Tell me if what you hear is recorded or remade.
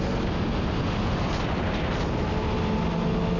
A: recorded